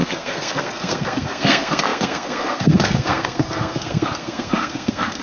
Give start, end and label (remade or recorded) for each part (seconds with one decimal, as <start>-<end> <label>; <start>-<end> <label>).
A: 0.0-5.2 remade